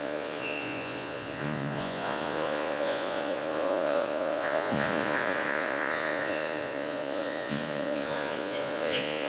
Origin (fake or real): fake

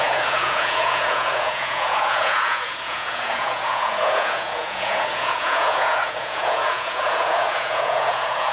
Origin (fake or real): fake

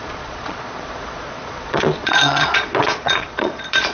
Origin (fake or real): fake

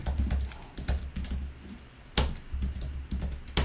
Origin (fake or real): real